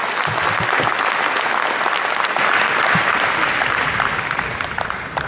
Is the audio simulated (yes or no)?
no